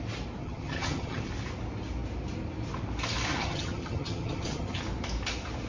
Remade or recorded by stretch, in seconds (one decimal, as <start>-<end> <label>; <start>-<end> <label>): 0.0-0.4 recorded; 0.4-1.3 remade; 1.3-3.3 recorded; 3.3-4.8 remade; 4.8-5.7 recorded